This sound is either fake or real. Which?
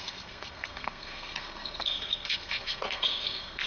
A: fake